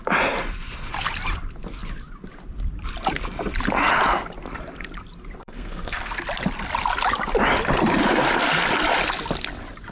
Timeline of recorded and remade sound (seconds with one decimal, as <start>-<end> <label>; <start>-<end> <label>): 0.0-5.4 recorded; 5.4-6.2 remade; 6.2-9.9 recorded